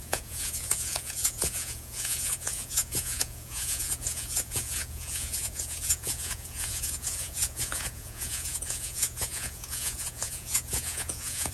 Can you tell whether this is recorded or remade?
remade